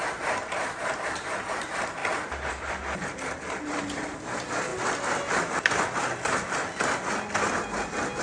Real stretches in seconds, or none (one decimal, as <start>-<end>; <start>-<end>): 2.0-2.5; 4.7-8.2